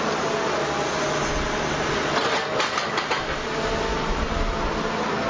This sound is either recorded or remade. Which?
recorded